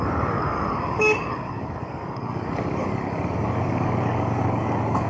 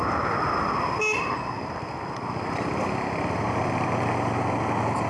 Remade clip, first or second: first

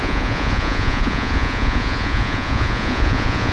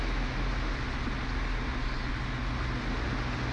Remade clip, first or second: first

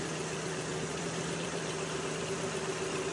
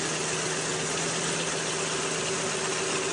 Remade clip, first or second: first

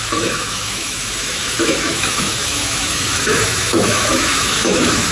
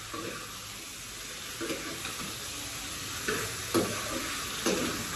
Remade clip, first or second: first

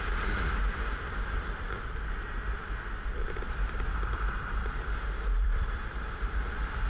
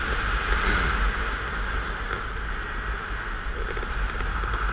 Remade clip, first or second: first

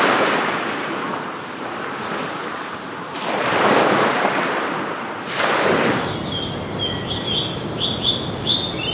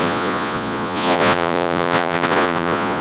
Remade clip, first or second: second